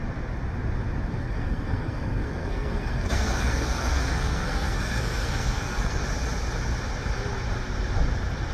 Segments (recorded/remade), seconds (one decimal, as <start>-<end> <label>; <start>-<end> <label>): 0.0-1.1 recorded; 1.1-6.0 remade; 6.0-8.5 recorded